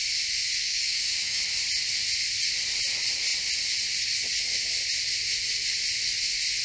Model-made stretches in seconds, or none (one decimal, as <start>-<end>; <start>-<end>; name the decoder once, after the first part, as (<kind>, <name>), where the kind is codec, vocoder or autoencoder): 0.6-1.4 (codec, DAC)